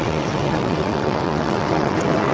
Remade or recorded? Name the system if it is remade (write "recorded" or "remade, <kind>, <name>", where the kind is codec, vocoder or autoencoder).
remade, vocoder, WaveNeXt